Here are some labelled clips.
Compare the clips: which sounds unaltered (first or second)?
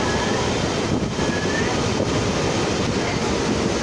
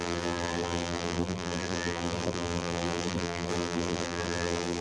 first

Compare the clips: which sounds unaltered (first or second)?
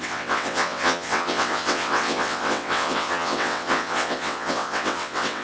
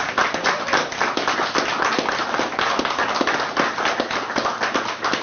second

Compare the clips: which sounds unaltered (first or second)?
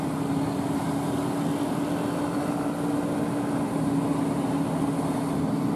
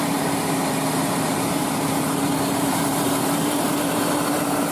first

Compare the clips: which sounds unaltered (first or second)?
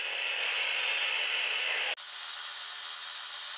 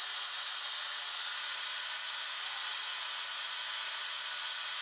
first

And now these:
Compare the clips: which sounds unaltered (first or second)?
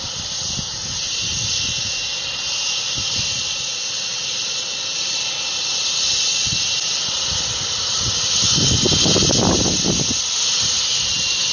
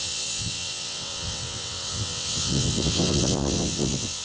first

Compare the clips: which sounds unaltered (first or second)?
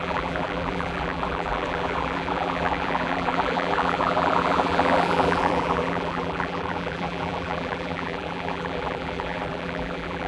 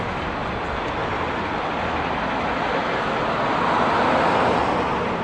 second